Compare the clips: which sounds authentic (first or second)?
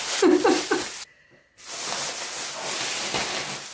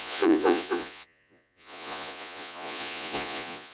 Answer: first